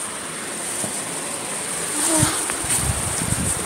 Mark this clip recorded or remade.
recorded